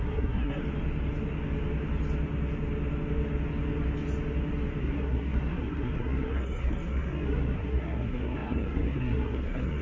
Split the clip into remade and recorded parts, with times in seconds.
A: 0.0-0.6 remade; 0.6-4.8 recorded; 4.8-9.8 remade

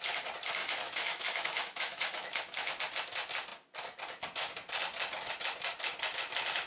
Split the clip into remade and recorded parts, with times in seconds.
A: 0.0-0.6 recorded; 0.6-2.8 remade; 2.8-6.7 recorded